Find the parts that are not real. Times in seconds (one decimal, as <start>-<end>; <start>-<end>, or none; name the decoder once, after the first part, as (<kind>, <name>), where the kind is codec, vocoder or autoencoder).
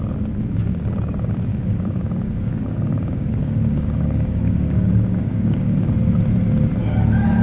1.5-5.9 (codec, DAC)